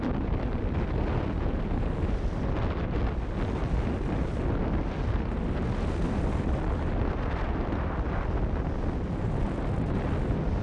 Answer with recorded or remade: recorded